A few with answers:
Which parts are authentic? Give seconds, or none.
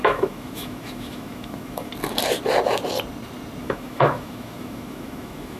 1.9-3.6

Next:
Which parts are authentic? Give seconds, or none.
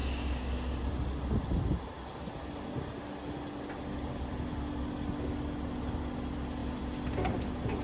0.0-7.8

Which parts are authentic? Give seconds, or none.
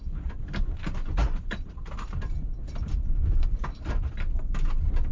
0.0-1.2; 4.0-5.1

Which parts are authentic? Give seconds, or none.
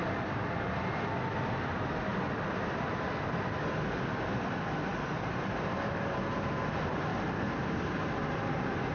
0.0-8.9